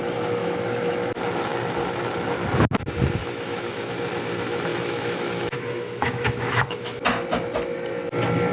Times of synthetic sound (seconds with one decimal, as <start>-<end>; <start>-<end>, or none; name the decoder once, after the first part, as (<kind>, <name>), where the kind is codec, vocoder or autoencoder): 0.4-1.1 (autoencoder, DAC-VAE); 3.2-3.9; 4.7-7.0